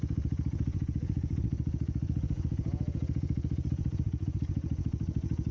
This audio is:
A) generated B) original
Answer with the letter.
A